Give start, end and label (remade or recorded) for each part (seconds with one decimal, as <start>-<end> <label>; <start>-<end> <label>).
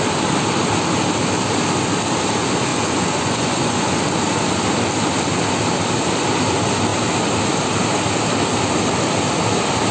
0.0-2.7 recorded; 2.7-4.0 remade; 4.0-9.9 recorded